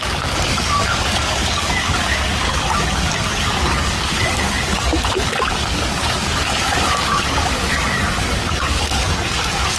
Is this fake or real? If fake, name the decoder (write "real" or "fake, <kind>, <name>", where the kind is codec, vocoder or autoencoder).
fake, codec, DAC